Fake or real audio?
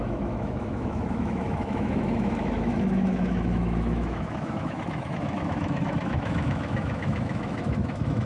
fake